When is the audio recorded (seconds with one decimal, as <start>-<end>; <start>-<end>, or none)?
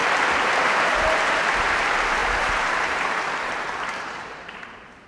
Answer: none